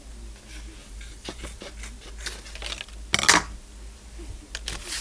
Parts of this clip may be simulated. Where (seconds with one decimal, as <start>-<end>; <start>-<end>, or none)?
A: 0.8-1.6